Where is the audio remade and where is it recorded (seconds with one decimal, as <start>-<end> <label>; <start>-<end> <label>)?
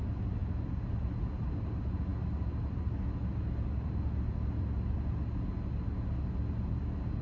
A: 0.0-7.2 recorded